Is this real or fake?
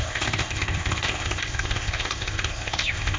fake